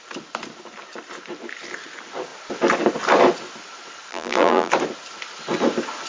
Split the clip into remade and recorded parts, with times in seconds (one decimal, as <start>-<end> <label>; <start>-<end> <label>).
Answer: 0.0-4.1 recorded; 4.1-4.7 remade; 4.7-6.1 recorded